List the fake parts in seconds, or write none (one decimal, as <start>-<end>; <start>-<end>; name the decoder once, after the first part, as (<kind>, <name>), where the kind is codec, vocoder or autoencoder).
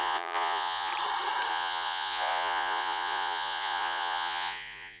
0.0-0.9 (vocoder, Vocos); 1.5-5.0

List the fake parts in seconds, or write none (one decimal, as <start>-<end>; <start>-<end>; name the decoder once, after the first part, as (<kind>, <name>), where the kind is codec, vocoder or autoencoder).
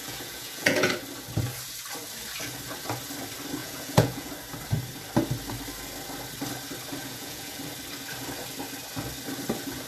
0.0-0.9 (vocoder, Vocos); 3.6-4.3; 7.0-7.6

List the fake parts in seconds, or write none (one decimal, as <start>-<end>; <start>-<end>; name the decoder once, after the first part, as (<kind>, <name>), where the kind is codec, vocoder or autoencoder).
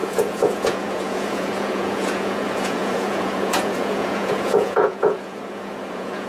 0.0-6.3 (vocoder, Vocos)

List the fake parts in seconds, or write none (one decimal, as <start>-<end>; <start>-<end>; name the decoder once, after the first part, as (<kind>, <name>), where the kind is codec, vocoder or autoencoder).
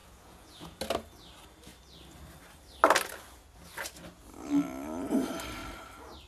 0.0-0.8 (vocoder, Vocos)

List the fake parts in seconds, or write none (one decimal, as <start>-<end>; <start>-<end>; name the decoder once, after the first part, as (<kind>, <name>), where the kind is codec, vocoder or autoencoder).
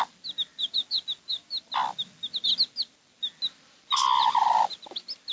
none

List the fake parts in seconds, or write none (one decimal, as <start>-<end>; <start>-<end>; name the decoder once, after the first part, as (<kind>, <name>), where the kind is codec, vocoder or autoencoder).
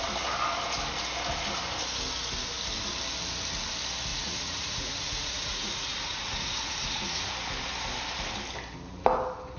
4.1-7.3 (vocoder, Vocos)